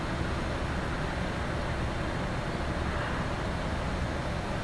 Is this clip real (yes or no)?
yes